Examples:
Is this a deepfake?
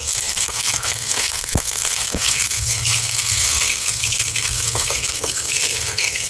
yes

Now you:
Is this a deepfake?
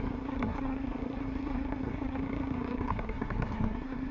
yes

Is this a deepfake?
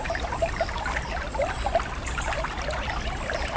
no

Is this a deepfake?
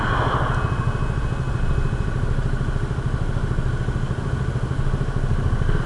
no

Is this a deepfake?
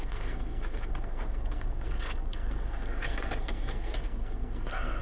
yes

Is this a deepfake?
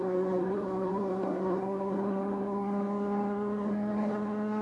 yes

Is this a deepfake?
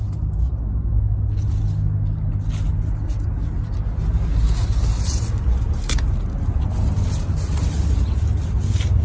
no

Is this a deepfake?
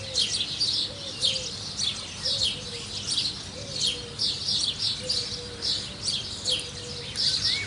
no